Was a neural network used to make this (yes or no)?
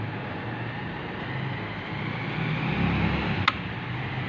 no